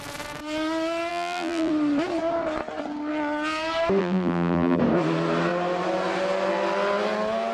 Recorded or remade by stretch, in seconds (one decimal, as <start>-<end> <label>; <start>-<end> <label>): 0.0-1.1 recorded; 1.1-1.7 remade; 1.7-4.0 recorded; 4.0-4.8 remade; 4.8-7.5 recorded